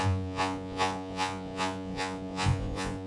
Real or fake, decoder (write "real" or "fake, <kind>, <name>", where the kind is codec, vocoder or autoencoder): fake, vocoder, Vocos